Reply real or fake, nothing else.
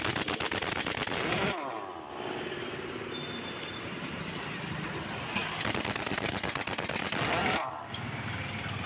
real